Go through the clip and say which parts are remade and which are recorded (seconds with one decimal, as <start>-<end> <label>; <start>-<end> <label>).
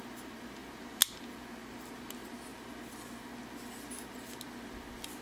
0.0-5.2 recorded